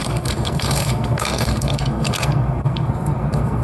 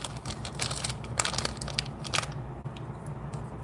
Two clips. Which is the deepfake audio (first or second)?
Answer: first